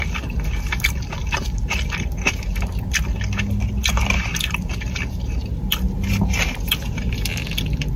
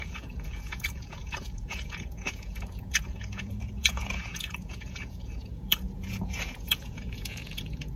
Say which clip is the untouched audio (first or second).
first